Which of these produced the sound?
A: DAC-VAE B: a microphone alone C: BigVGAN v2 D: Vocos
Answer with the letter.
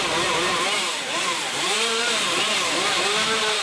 C